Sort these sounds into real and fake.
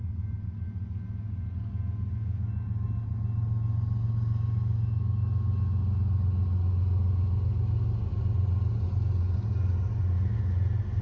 real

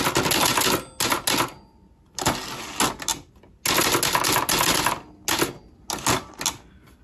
real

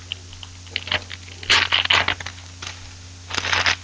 real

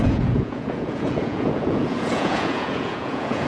fake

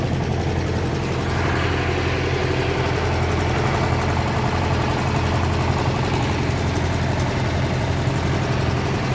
real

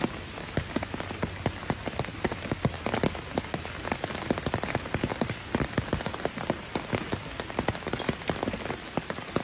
real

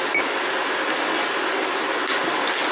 real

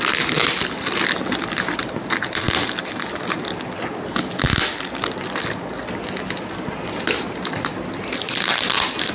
real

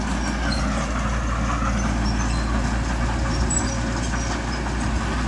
real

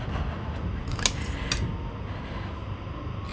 real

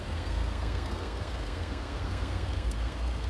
fake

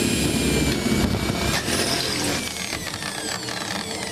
real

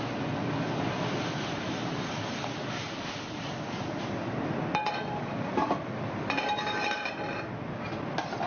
real